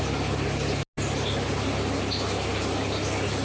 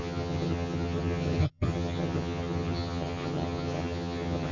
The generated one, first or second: second